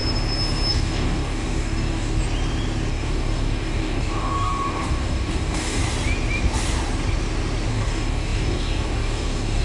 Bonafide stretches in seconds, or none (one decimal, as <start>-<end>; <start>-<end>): 0.0-0.7; 2.2-2.9; 5.8-7.7